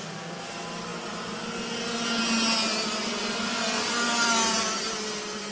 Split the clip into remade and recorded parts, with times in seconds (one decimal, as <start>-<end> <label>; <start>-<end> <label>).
0.0-5.5 recorded